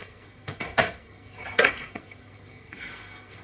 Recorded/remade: remade